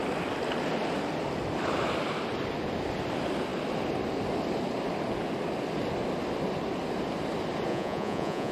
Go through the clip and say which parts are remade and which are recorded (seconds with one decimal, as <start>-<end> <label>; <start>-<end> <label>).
0.0-7.7 recorded; 7.7-8.5 remade